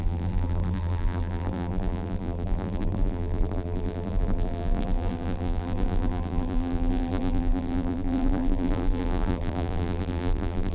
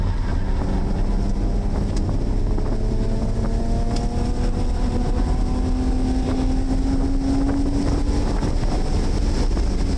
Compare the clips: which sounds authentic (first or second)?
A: second